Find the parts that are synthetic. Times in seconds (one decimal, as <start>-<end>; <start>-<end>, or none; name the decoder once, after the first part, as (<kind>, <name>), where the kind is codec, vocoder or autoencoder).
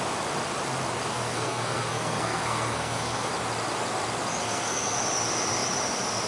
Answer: 1.1-3.3 (codec, SNAC); 4.4-5.0